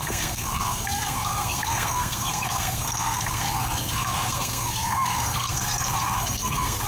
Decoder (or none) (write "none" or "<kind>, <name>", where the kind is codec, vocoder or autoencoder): codec, SNAC